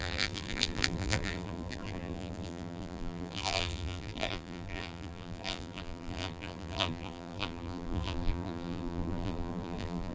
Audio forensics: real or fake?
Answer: fake